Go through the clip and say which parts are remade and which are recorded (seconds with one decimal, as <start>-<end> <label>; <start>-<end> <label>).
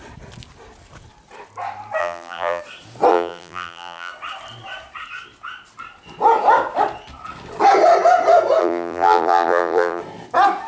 0.0-2.0 recorded; 2.0-2.6 remade; 2.6-3.1 recorded; 3.1-4.1 remade; 4.1-8.6 recorded; 8.6-10.0 remade; 10.0-10.7 recorded